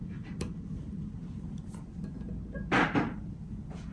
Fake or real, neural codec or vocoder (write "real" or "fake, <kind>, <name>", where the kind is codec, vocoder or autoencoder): real